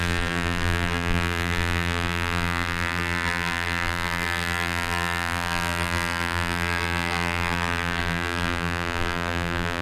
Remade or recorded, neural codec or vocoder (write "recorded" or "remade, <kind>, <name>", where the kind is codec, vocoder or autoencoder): remade, vocoder, BigVGAN v2